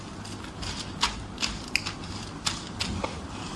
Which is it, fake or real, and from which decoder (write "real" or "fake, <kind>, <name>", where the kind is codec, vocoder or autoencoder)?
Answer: real